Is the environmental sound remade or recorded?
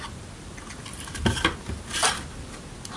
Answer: recorded